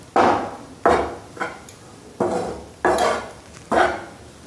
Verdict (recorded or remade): recorded